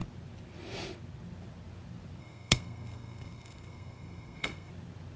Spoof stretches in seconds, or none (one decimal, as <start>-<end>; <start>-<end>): 2.2-4.7

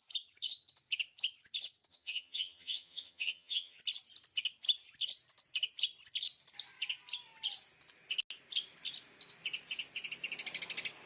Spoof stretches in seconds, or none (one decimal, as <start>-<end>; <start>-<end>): 1.9-3.8

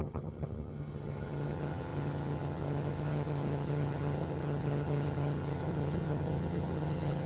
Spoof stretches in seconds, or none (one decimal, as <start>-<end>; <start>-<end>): 0.0-7.3

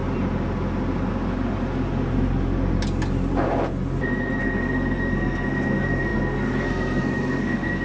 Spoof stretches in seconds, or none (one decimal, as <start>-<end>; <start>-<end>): 4.4-7.8

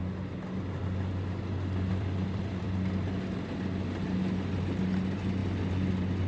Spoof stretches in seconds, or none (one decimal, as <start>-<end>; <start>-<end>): 1.9-2.7

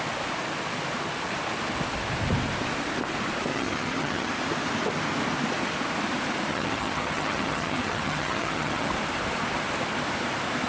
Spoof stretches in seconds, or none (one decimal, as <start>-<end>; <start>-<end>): 3.5-4.3; 6.5-8.9